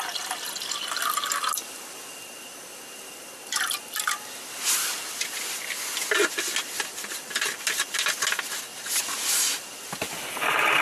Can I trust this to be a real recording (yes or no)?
yes